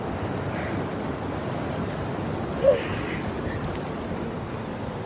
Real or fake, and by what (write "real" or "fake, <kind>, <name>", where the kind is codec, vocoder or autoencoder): real